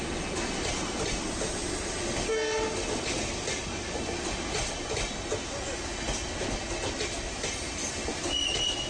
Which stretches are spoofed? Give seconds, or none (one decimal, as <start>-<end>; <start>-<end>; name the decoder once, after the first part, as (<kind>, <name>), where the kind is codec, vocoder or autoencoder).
none